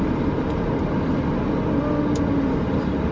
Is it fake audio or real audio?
real